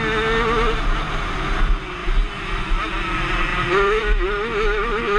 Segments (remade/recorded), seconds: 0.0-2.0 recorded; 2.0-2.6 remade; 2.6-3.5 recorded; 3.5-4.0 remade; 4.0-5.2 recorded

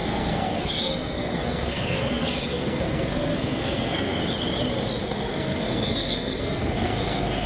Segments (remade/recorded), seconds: 0.0-4.2 remade; 4.2-5.0 recorded; 5.0-7.5 remade

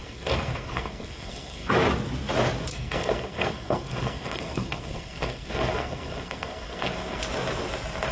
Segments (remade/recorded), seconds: 0.0-1.7 remade; 1.7-2.7 recorded; 2.7-7.2 remade; 7.2-8.1 recorded

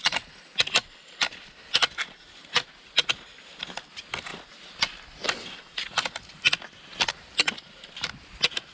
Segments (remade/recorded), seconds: 0.0-8.7 recorded